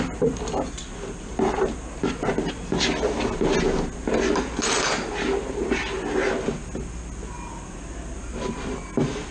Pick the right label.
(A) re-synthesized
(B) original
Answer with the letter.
B